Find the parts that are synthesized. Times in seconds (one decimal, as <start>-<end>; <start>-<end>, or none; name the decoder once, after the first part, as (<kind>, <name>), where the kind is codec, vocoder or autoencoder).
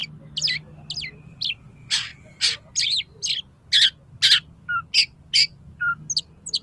none